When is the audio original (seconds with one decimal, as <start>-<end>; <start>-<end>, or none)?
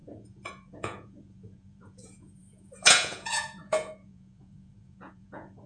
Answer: none